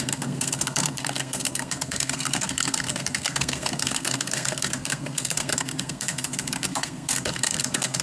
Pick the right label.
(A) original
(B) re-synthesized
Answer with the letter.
B